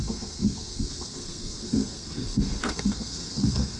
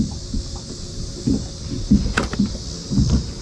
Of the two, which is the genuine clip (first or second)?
second